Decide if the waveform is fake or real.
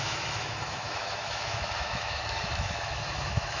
fake